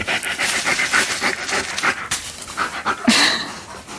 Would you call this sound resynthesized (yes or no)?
yes